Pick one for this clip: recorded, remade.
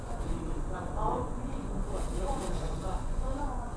remade